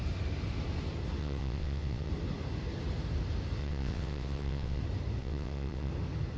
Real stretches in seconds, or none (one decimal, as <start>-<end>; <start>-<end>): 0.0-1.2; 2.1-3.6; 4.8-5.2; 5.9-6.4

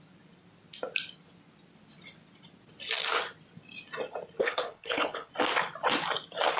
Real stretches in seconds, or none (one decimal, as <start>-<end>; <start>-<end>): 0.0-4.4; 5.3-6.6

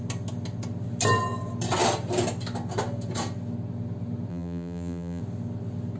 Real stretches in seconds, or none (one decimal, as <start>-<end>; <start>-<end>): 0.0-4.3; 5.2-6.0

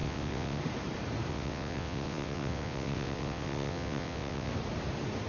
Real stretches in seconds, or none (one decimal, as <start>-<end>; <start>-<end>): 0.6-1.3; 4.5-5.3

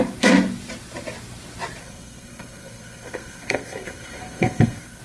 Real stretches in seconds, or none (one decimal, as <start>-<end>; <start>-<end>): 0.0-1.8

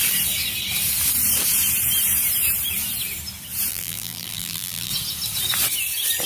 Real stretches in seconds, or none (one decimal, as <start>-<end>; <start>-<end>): 0.0-3.7; 4.9-6.3